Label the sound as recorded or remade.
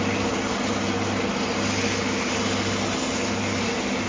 recorded